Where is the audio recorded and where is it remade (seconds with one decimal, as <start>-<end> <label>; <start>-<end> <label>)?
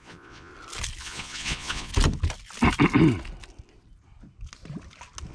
0.0-0.5 remade; 0.5-1.0 recorded; 1.0-1.9 remade; 1.9-5.3 recorded